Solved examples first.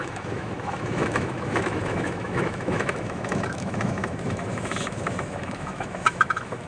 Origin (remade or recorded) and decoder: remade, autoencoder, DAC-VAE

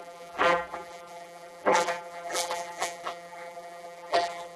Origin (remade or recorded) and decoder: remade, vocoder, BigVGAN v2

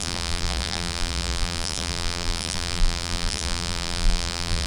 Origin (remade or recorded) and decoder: remade, vocoder, BigVGAN v2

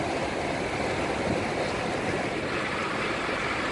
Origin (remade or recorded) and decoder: recorded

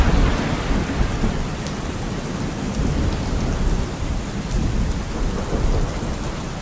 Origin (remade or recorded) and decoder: recorded